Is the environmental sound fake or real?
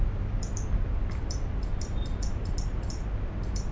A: real